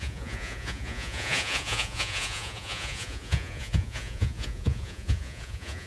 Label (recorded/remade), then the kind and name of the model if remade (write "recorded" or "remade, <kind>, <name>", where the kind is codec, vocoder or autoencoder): remade, vocoder, Vocos